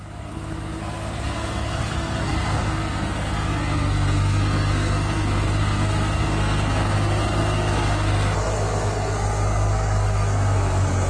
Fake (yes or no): yes